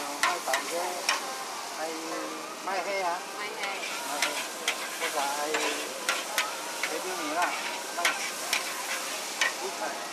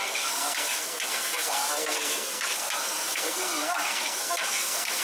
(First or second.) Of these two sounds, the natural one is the first